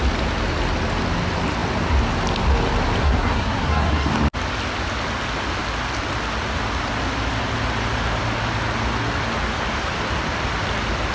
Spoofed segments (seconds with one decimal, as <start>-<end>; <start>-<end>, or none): 3.0-4.1